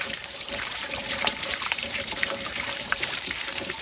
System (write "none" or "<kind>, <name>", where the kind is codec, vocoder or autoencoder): vocoder, BigVGAN v2